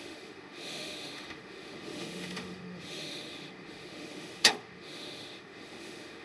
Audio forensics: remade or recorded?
remade